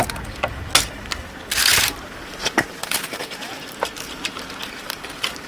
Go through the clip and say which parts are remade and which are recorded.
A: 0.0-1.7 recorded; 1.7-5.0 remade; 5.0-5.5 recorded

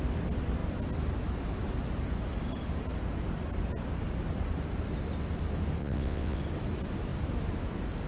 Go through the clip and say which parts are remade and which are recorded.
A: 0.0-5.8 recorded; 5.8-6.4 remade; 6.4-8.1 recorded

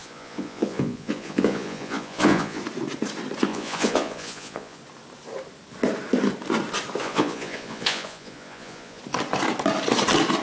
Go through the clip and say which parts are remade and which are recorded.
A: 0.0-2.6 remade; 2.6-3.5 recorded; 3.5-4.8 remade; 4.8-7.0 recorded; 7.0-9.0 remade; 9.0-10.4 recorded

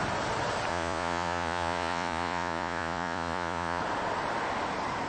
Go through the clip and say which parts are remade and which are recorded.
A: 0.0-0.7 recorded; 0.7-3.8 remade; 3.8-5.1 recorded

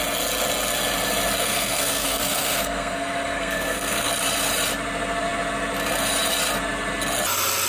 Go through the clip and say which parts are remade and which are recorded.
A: 0.0-1.4 recorded; 1.4-4.1 remade; 4.1-7.7 recorded

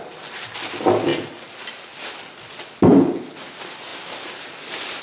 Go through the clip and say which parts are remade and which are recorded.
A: 0.0-5.0 recorded

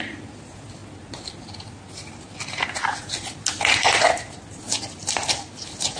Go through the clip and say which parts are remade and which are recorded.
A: 0.0-6.0 recorded

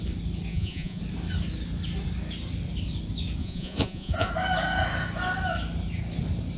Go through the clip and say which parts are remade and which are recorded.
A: 0.0-0.5 recorded; 0.5-1.0 remade; 1.0-3.4 recorded; 3.4-4.3 remade; 4.3-6.6 recorded